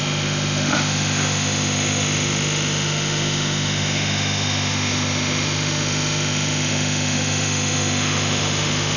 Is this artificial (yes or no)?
yes